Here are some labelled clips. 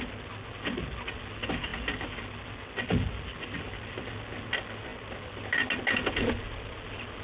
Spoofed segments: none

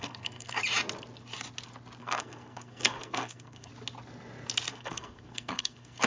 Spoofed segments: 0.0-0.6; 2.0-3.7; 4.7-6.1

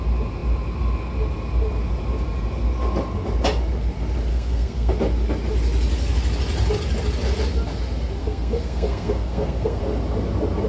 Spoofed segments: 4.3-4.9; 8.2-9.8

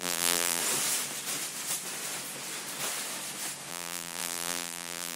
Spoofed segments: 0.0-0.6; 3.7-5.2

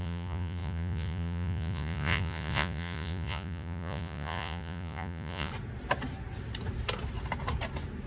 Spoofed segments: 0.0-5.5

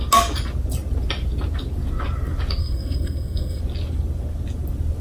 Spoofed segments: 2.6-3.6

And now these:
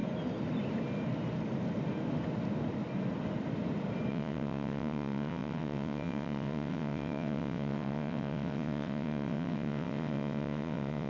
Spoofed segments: 4.1-11.1